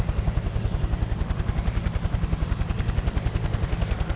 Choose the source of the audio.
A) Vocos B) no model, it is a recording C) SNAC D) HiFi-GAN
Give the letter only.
B